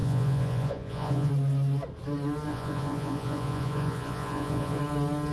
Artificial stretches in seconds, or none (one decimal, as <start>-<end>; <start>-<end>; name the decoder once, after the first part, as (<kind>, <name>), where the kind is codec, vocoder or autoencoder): 0.0-1.3 (vocoder, Vocos); 2.5-4.8